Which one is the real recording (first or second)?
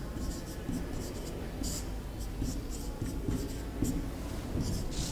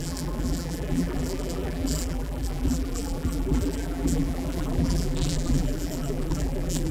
first